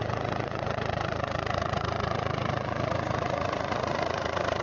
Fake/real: fake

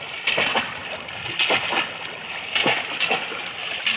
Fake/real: real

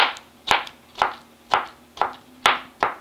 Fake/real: real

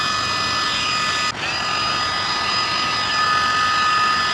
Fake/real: real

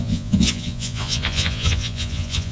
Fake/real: fake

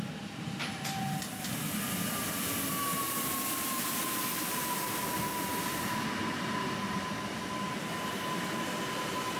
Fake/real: real